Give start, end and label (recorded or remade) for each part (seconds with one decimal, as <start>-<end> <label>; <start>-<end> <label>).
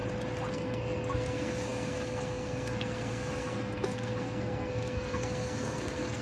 0.0-0.5 recorded; 0.5-6.2 remade